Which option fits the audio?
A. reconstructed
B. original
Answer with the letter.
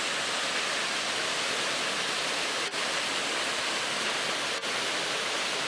B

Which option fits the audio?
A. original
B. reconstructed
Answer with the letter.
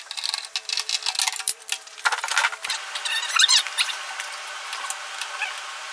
A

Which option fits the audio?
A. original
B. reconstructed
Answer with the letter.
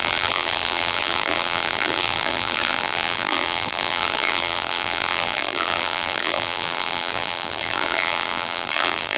B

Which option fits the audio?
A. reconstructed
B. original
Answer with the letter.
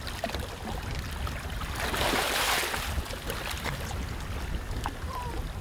B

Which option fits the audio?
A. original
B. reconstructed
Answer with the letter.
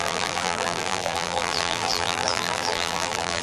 B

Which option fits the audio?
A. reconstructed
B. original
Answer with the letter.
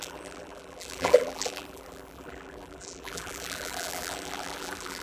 A